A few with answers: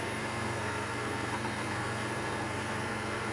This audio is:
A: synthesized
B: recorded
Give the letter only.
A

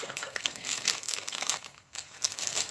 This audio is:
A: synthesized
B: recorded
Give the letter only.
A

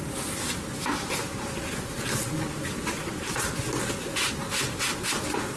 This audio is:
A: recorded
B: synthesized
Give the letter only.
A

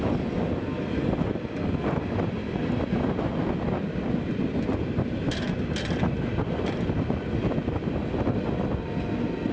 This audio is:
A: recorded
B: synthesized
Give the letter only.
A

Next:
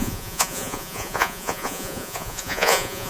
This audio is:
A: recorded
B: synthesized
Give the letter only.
B